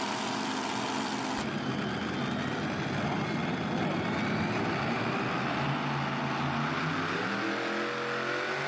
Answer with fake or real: real